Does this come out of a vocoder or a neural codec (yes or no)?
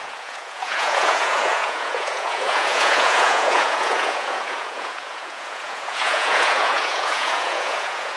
yes